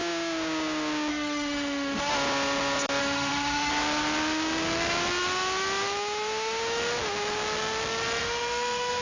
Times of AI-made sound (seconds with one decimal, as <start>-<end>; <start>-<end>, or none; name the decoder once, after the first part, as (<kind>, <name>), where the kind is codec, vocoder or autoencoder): 1.1-2.1 (autoencoder, DAC-VAE); 3.0-3.7; 8.2-9.0